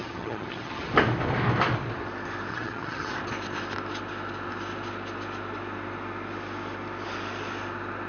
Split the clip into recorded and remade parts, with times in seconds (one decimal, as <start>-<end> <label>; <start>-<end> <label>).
0.0-0.9 remade; 0.9-2.5 recorded; 2.5-3.1 remade; 3.1-8.1 recorded